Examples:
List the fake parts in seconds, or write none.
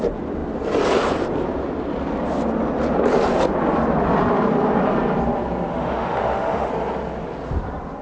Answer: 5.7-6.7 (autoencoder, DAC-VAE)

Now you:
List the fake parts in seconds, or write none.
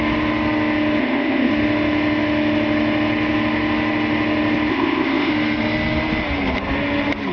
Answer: 1.0-1.5 (codec, ZipCodec); 4.7-5.3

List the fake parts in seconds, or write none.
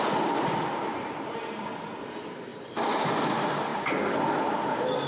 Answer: none